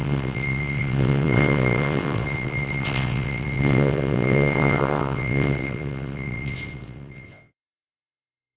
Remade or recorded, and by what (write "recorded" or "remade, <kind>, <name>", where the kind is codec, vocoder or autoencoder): remade, vocoder, WaveNeXt